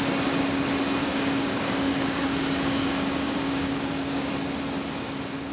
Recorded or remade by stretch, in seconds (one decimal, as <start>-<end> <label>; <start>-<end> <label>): 0.0-1.0 recorded; 1.0-4.3 remade; 4.3-5.5 recorded